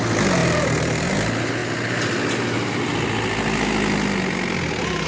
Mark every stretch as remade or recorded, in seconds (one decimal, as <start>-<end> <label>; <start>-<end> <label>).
0.0-0.4 recorded; 0.4-1.1 remade; 1.1-5.1 recorded